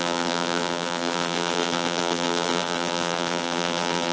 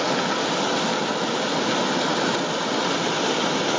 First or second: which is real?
second